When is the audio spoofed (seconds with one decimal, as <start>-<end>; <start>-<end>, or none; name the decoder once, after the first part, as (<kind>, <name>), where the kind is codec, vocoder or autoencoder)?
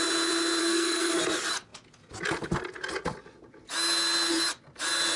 0.6-1.2 (codec, SNAC)